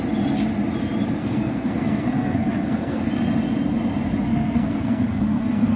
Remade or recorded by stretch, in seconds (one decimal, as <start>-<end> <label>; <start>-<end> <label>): 0.0-1.2 recorded; 1.2-3.0 remade; 3.0-4.3 recorded; 4.3-5.8 remade

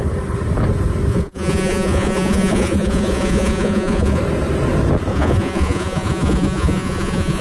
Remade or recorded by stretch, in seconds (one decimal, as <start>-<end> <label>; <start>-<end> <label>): 0.0-1.1 recorded; 1.1-4.2 remade; 4.2-5.1 recorded; 5.1-7.4 remade

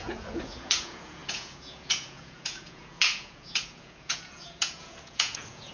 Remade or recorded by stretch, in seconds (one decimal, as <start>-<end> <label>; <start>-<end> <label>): 0.0-5.7 remade

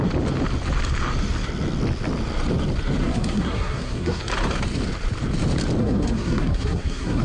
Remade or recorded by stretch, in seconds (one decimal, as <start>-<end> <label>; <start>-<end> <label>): 0.0-3.0 recorded; 3.0-4.2 remade; 4.2-5.8 recorded; 5.8-7.2 remade

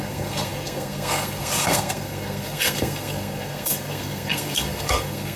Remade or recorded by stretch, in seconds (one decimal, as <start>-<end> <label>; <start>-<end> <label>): 0.0-5.4 remade

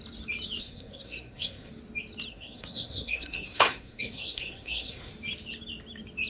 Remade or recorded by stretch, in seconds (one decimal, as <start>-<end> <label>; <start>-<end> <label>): 0.0-0.6 recorded; 0.6-1.7 remade; 1.7-2.3 recorded; 2.3-5.1 remade; 5.1-6.3 recorded

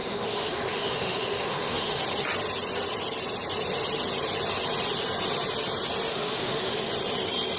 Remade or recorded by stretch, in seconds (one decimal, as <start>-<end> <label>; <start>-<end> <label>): 0.0-2.0 remade; 2.0-6.1 recorded; 6.1-6.9 remade; 6.9-7.6 recorded

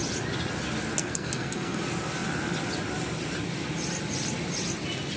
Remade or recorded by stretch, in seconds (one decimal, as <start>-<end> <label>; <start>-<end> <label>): 0.0-1.0 recorded; 1.0-1.8 remade; 1.8-5.2 recorded